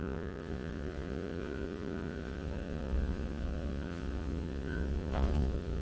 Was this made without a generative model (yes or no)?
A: no